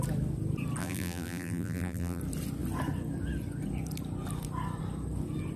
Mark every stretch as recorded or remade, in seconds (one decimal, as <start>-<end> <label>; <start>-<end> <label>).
0.0-0.8 recorded; 0.8-2.2 remade; 2.2-5.6 recorded